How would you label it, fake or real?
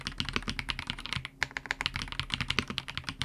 real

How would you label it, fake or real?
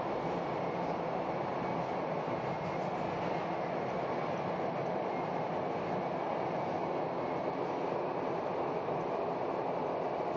real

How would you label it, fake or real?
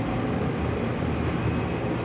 real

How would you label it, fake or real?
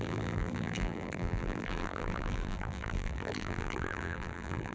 fake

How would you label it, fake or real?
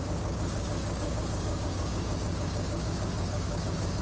fake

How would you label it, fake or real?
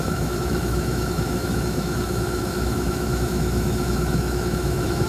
fake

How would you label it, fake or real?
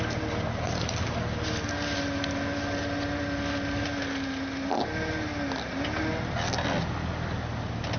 real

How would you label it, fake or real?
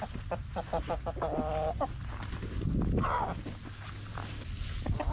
real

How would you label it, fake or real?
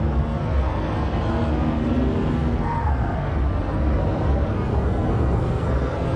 fake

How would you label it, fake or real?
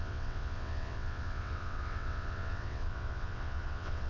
fake